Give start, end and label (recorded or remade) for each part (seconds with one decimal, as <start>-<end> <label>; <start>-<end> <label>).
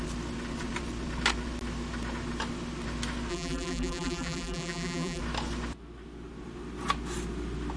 0.0-3.3 recorded; 3.3-5.2 remade; 5.2-7.8 recorded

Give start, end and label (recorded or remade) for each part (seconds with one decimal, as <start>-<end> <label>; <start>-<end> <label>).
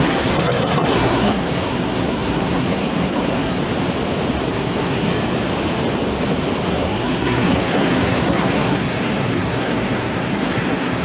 0.0-3.6 remade; 3.6-4.5 recorded; 4.5-5.1 remade; 5.1-6.7 recorded; 6.7-11.0 remade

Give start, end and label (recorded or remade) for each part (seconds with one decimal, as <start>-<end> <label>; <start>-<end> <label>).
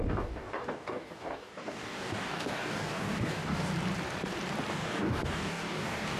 0.0-3.7 remade; 3.7-4.7 recorded; 4.7-6.2 remade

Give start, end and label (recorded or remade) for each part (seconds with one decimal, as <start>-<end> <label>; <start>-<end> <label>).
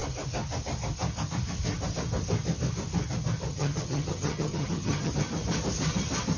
0.0-3.5 recorded; 3.5-5.1 remade; 5.1-6.4 recorded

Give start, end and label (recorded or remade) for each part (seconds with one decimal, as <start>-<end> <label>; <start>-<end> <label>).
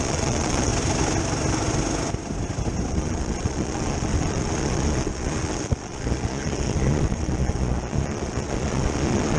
0.0-0.7 remade; 0.7-2.9 recorded; 2.9-9.4 remade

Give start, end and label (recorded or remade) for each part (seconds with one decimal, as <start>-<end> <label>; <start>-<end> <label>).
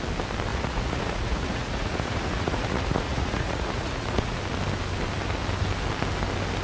0.0-0.5 recorded; 0.5-4.4 remade; 4.4-6.6 recorded